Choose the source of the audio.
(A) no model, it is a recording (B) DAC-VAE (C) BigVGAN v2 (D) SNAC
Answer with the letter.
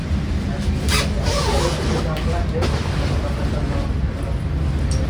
A